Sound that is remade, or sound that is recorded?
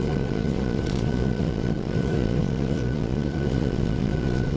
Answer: remade